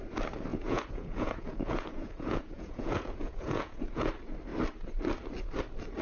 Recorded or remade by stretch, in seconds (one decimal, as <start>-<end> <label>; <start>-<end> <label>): 0.0-0.5 recorded; 0.5-4.1 remade; 4.1-6.0 recorded